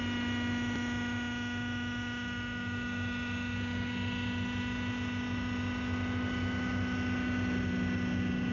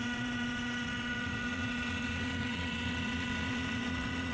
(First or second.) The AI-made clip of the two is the second